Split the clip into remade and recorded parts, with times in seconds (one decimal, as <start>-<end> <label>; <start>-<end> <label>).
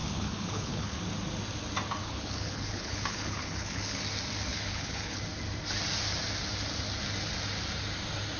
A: 0.0-1.0 remade; 1.0-2.0 recorded; 2.0-4.0 remade; 4.0-4.5 recorded; 4.5-5.2 remade; 5.2-8.4 recorded